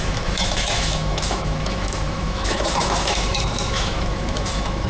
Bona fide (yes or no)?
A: no